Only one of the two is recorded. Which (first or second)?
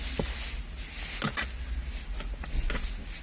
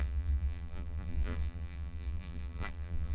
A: first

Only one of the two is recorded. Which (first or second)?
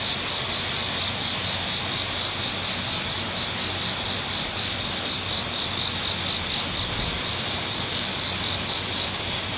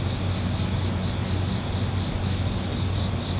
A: second